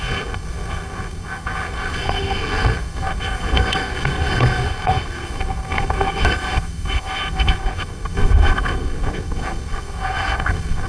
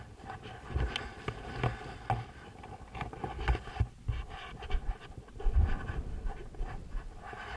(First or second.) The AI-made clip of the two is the first